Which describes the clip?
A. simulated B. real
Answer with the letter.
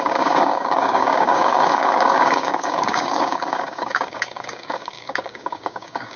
A